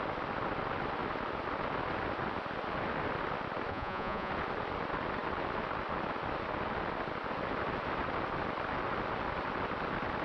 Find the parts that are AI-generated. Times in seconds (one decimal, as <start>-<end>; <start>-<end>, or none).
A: 3.7-4.3